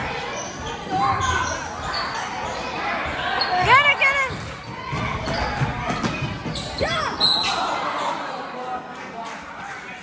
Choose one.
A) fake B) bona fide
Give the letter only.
B